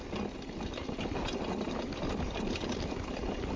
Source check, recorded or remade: recorded